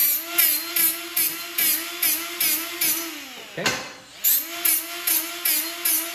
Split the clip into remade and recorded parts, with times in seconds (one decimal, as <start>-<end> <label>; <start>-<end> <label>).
0.0-6.1 recorded